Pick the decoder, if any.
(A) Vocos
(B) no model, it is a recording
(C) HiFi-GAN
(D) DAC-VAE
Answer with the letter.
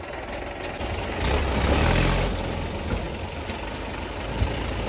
B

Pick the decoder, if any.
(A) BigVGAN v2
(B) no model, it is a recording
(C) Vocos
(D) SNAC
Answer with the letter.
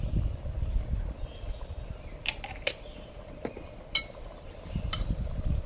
B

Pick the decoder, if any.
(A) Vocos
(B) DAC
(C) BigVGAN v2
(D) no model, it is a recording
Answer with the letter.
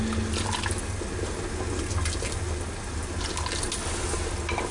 D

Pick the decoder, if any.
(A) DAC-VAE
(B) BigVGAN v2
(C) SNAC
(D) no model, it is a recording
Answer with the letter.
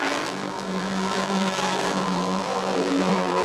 B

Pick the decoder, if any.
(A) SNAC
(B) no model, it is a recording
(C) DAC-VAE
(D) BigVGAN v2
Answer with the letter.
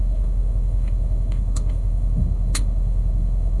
C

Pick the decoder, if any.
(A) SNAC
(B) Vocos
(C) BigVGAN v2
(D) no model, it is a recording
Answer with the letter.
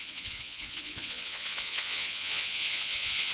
B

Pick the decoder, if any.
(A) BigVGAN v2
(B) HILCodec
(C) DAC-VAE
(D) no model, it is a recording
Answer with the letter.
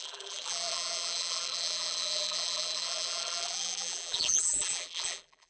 A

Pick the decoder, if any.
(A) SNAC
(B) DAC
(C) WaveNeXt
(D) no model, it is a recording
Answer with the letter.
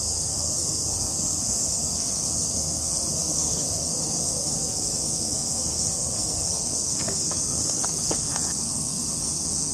A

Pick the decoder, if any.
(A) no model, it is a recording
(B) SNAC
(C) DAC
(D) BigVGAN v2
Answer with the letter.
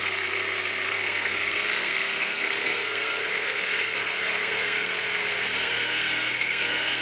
B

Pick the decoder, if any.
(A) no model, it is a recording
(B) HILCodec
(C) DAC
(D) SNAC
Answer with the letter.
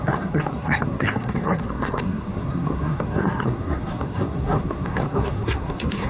D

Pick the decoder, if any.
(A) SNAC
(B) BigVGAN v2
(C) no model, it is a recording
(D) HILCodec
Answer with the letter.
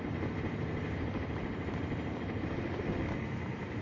B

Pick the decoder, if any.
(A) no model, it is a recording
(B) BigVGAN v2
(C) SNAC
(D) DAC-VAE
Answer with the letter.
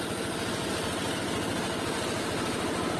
A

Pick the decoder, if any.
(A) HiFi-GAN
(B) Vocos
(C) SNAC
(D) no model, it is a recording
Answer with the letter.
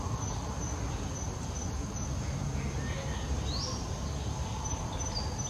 D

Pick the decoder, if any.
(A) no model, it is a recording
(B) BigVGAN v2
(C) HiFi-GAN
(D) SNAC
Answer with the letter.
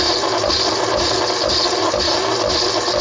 A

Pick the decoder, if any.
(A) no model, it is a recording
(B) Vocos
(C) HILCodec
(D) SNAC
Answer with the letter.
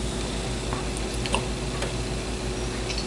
A